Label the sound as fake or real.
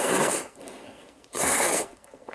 fake